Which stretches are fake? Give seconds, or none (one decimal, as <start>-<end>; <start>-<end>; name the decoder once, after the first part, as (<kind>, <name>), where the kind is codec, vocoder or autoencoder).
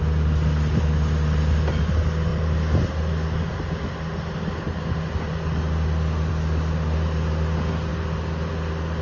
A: none